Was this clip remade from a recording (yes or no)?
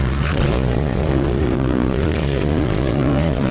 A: yes